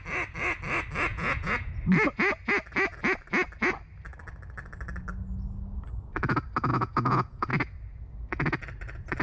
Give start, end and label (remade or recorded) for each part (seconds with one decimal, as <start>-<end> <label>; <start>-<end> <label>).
0.0-1.1 recorded; 1.1-1.7 remade; 1.7-6.7 recorded; 6.7-7.5 remade; 7.5-9.2 recorded